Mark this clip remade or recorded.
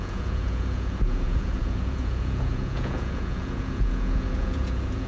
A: remade